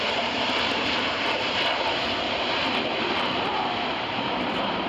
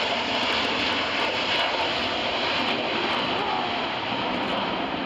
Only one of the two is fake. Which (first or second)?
first